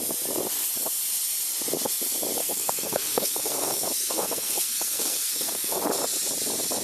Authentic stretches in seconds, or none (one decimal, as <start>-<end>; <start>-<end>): 0.0-2.4; 5.8-6.8